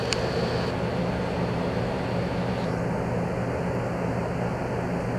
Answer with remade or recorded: recorded